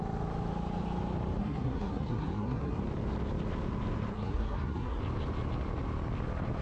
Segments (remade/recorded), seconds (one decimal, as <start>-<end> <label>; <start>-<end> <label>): 0.0-1.4 recorded; 1.4-2.8 remade; 2.8-4.1 recorded; 4.1-5.0 remade; 5.0-6.6 recorded